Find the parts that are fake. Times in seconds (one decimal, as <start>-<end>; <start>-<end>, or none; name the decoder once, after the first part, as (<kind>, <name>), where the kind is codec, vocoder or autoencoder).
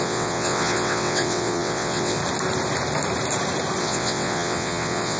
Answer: 0.0-2.2 (vocoder, WaveNeXt); 3.8-5.2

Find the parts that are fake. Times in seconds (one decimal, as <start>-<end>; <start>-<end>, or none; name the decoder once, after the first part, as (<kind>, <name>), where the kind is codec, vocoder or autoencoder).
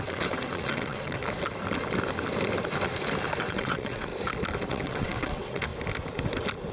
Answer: 0.0-1.2 (vocoder, WaveNeXt); 3.4-4.1; 4.7-5.7